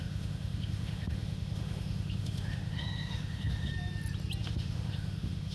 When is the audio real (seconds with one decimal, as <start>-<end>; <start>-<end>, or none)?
3.7-4.4

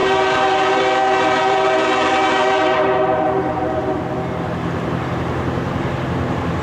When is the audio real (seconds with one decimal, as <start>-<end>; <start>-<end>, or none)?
4.0-4.7; 5.9-6.6

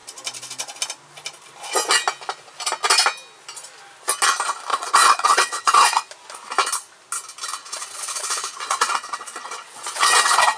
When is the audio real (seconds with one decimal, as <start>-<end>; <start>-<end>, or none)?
0.0-4.7; 6.1-7.6

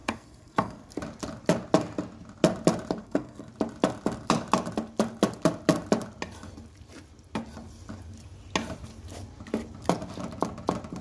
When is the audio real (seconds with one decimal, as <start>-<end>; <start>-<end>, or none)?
0.9-3.0; 3.5-11.0

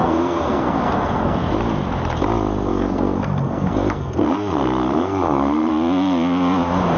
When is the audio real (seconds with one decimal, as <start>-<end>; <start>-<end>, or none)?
1.5-2.7; 5.7-7.0

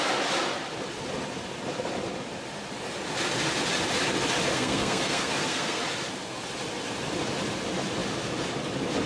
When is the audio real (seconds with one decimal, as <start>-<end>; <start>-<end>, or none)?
0.0-4.5; 5.8-9.1